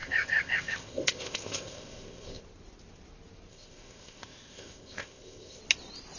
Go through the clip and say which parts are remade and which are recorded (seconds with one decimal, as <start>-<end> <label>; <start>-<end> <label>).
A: 0.0-2.4 remade; 2.4-3.5 recorded; 3.5-5.6 remade; 5.6-6.2 recorded